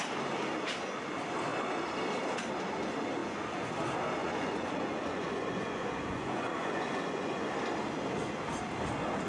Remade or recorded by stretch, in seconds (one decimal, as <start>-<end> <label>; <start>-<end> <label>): 0.0-3.2 recorded; 3.2-3.7 remade; 3.7-4.2 recorded; 4.2-7.5 remade; 7.5-9.3 recorded